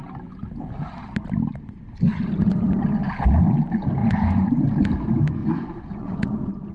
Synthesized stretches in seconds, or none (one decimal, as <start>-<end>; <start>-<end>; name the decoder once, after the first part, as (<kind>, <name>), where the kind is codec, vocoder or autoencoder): 4.0-4.5 (vocoder, Vocos); 5.4-6.7